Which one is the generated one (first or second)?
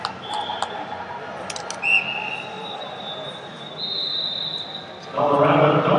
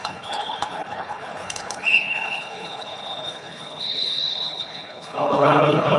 second